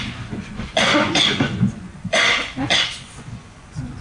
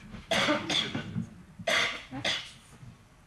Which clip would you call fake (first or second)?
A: first